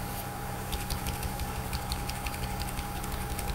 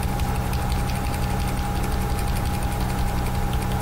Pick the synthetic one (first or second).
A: first